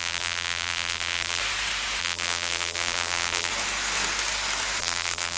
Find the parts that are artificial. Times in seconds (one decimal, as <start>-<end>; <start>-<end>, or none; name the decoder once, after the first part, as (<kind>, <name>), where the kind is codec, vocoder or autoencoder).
0.0-1.4 (vocoder, BigVGAN v2); 2.0-3.5; 4.8-5.4